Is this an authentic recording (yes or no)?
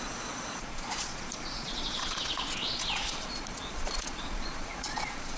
no